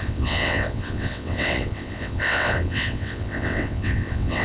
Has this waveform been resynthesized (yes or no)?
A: yes